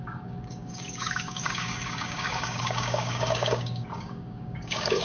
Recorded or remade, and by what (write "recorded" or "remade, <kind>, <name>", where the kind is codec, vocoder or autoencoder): remade, codec, DAC